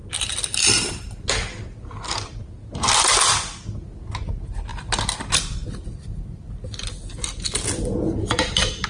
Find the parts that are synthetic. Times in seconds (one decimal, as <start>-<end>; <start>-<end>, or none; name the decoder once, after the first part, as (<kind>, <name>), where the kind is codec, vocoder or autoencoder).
0.0-2.4 (vocoder, BigVGAN v2); 4.7-6.5